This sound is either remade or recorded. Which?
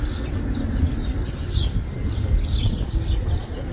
recorded